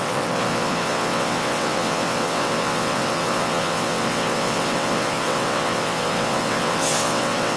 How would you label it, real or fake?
fake